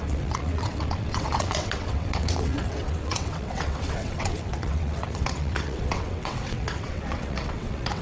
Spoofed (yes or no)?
yes